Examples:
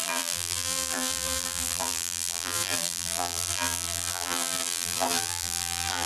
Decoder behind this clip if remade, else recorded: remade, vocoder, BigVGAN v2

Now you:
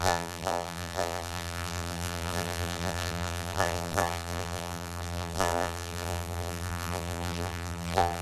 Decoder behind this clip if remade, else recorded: remade, vocoder, BigVGAN v2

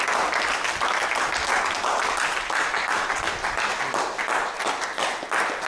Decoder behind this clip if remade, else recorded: recorded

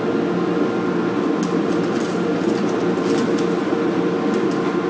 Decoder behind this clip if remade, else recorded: recorded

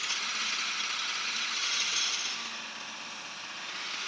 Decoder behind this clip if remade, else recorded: recorded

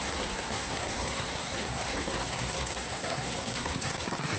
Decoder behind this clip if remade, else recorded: remade, codec, SNAC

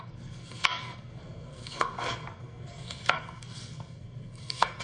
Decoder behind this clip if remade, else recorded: remade, codec, SNAC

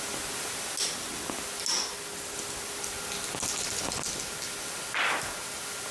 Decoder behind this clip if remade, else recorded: recorded